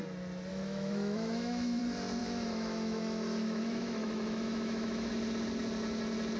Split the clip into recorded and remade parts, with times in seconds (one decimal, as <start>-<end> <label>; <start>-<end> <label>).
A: 0.0-0.5 recorded; 0.5-1.8 remade; 1.8-2.2 recorded; 2.2-5.1 remade; 5.1-6.4 recorded